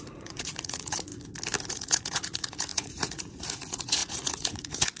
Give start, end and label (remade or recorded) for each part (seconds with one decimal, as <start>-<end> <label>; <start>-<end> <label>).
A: 0.0-1.1 remade; 1.1-1.7 recorded; 1.7-5.0 remade